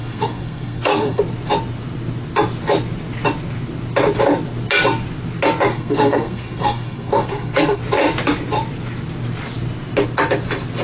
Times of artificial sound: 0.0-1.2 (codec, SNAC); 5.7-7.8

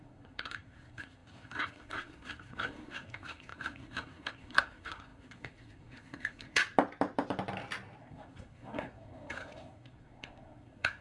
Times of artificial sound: 0.0-6.6 (codec, SNAC); 8.0-11.0

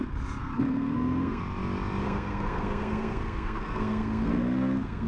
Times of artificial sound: 0.4-1.4 (codec, SNAC); 2.0-5.1

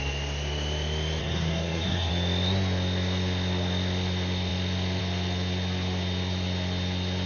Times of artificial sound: 1.2-2.1 (codec, SNAC)

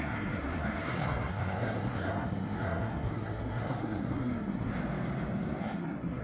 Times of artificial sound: 0.0-4.7 (codec, SNAC); 5.6-6.2

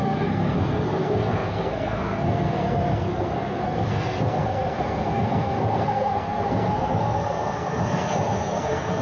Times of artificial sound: 0.0-9.0 (codec, SNAC)

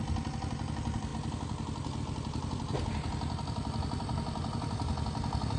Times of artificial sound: none